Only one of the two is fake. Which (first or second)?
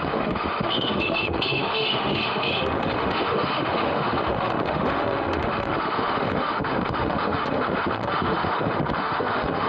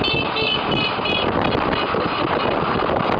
first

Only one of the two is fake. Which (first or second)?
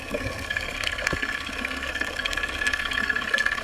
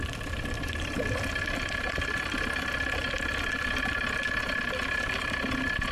first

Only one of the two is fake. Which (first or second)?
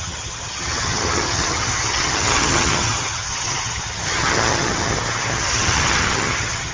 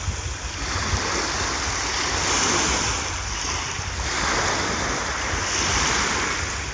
first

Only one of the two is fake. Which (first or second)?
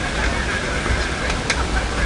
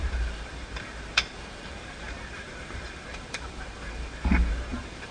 second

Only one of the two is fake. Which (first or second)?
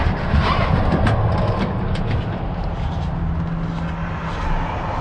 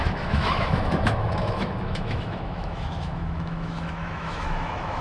second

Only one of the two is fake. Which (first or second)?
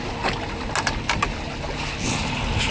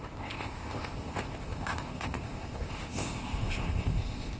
second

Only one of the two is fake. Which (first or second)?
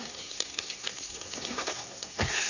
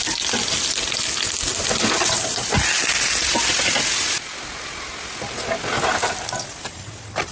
first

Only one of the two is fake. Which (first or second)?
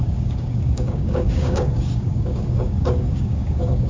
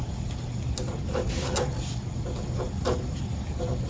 first